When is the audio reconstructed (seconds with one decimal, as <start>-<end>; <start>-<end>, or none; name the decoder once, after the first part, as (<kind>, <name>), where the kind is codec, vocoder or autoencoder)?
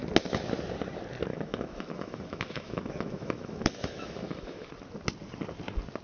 1.3-4.7 (autoencoder, DAC-VAE)